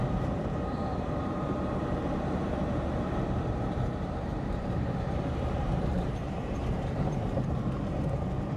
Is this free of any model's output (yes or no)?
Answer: no